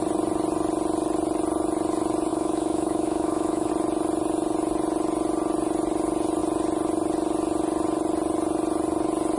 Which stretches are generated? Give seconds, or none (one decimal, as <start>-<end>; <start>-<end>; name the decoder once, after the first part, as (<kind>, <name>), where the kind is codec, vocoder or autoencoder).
2.3-3.7 (autoencoder, DAC-VAE)